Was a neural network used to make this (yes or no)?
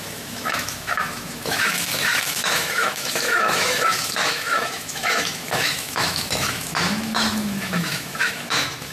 yes